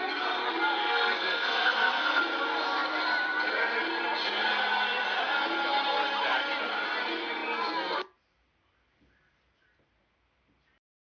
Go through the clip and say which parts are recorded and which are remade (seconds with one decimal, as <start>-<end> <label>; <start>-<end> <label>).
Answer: 0.0-0.8 recorded; 0.8-2.2 remade; 2.2-11.1 recorded